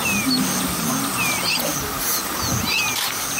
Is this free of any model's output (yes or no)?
yes